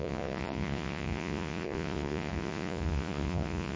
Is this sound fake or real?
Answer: fake